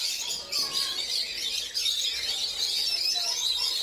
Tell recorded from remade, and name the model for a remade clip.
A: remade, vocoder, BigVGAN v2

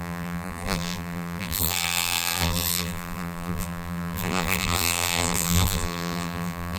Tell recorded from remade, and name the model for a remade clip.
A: remade, vocoder, BigVGAN v2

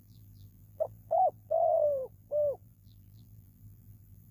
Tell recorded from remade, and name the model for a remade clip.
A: remade, vocoder, BigVGAN v2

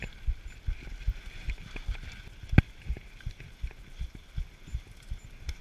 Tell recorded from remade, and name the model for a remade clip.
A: recorded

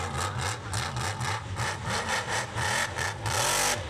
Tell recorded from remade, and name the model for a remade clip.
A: recorded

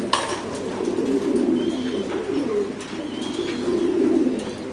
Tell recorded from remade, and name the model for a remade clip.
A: recorded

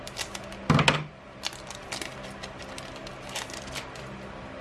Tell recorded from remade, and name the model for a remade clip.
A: recorded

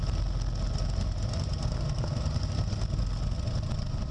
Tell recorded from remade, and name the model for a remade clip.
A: recorded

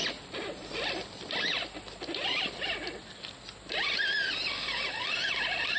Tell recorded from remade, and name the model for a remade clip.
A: recorded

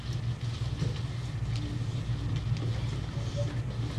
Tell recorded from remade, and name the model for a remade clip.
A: recorded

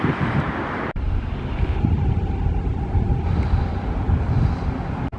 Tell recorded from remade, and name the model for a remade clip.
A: remade, vocoder, BigVGAN v2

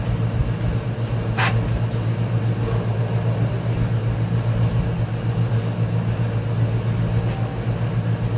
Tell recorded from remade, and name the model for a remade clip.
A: recorded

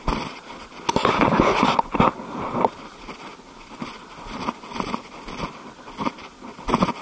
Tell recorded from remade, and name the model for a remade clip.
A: recorded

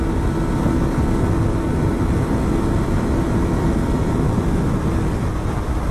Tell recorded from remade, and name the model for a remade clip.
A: recorded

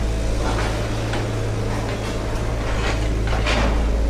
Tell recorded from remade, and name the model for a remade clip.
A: recorded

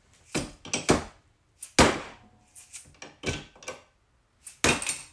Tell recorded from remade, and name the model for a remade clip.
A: recorded